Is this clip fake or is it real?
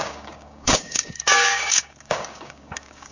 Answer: fake